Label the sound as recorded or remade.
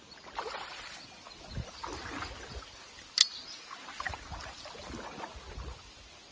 recorded